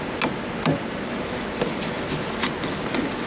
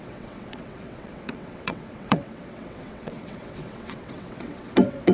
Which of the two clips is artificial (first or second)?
second